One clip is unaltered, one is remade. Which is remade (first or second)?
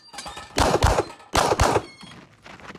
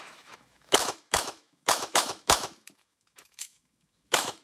second